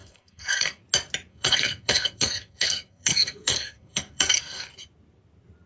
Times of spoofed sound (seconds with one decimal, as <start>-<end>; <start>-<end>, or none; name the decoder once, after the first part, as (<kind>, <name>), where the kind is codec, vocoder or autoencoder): 0.0-0.8 (codec, SNAC); 1.3-4.7